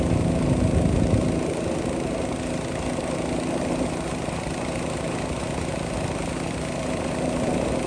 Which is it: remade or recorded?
recorded